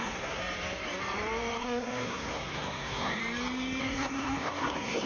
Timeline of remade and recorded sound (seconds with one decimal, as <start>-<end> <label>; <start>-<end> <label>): 0.0-0.4 remade; 0.4-1.6 recorded; 1.6-3.2 remade; 3.2-3.8 recorded; 3.8-5.1 remade